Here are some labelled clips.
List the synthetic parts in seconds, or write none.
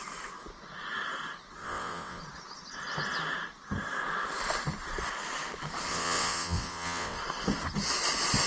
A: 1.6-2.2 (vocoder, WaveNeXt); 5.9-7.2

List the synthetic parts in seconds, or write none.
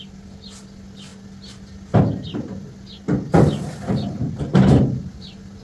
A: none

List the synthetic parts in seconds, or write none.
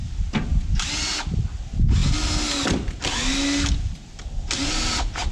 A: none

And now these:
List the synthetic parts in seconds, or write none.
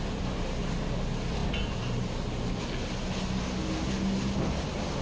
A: none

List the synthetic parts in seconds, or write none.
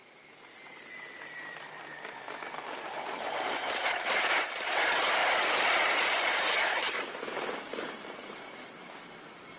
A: none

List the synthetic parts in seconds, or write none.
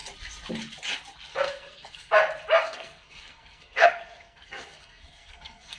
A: 1.3-2.1 (codec, SNAC); 2.6-5.8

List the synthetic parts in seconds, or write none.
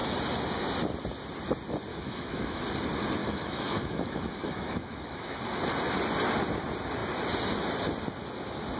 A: 1.9-2.6 (autoencoder, DAC-VAE); 3.2-5.4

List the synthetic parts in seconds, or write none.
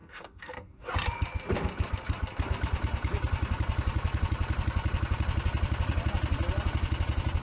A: 0.0-0.9 (codec, SNAC)